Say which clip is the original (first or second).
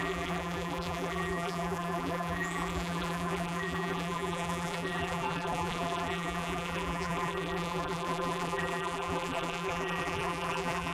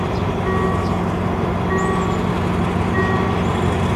second